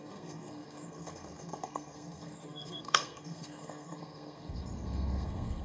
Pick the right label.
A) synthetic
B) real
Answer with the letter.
A